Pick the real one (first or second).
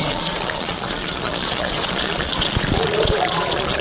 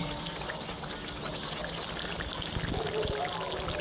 second